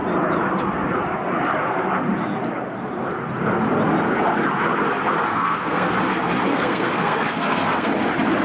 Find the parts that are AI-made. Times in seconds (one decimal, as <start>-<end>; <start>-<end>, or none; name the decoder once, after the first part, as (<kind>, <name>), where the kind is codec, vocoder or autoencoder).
5.3-5.9 (codec, SNAC); 6.5-7.9